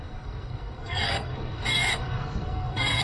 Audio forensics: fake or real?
fake